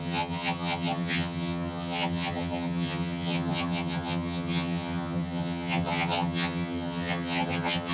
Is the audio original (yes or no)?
no